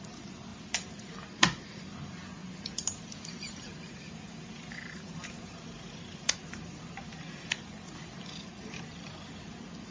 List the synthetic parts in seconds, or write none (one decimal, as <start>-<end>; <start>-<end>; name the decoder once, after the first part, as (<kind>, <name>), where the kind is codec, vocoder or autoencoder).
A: 2.4-7.5 (vocoder, BigVGAN v2)